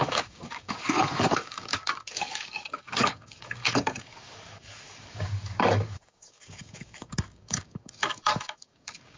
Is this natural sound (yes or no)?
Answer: no